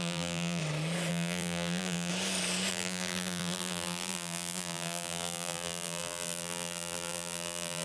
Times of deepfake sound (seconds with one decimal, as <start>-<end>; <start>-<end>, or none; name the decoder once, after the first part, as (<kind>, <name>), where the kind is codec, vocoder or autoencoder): 0.0-0.6 (vocoder, BigVGAN v2); 1.1-2.1; 2.7-7.8